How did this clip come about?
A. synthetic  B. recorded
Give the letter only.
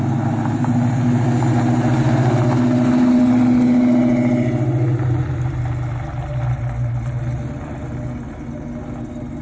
B